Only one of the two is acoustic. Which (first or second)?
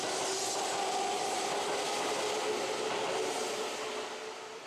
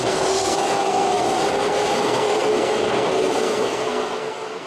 first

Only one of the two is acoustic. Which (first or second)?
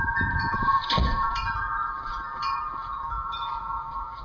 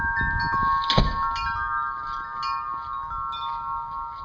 second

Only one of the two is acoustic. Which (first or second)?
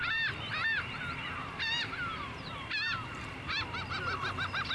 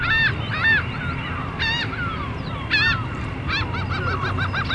second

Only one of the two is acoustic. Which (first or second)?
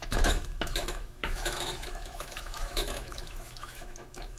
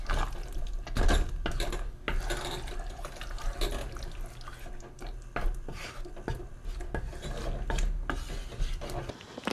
second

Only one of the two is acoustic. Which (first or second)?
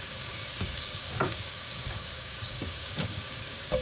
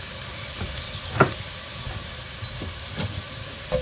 second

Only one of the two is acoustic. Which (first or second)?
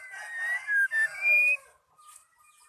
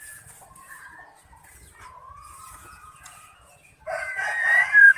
first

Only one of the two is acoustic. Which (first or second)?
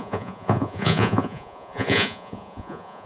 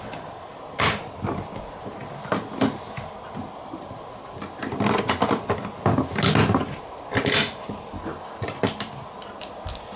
second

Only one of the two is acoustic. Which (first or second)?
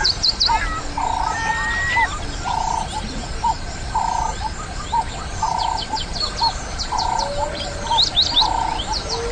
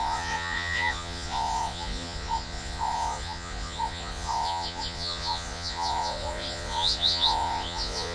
first